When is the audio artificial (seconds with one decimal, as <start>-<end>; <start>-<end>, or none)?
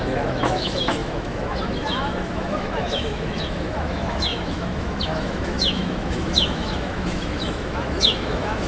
0.0-8.7